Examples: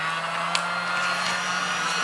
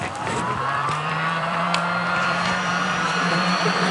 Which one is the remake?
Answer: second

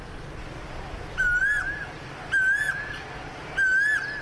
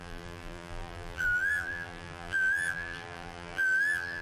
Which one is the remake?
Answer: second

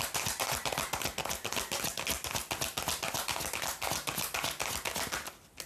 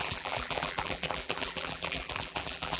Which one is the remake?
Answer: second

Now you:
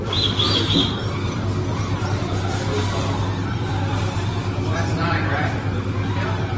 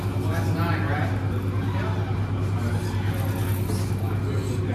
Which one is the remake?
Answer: first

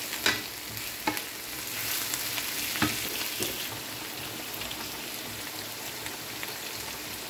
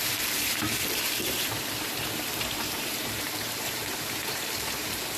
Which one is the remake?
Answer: second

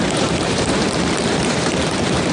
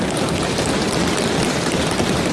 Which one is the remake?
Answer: first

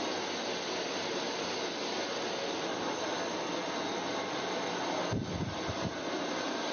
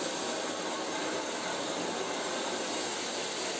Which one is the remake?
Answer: second